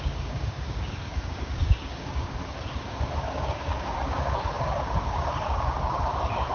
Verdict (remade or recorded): remade